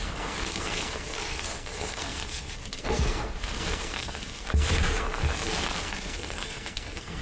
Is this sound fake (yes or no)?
yes